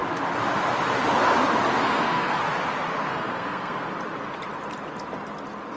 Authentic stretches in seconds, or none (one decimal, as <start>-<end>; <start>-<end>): 0.0-1.8; 2.4-3.1; 3.9-5.8